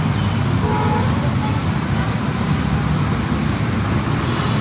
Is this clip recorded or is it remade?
recorded